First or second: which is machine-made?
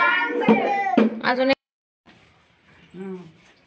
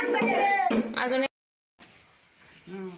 first